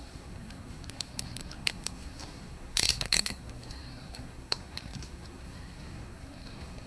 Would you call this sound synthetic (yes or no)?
yes